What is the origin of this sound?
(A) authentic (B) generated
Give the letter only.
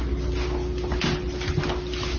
A